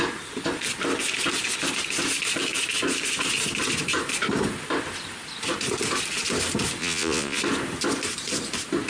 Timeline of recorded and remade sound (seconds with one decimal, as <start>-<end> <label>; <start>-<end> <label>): 0.0-6.8 recorded; 6.8-7.4 remade; 7.4-8.9 recorded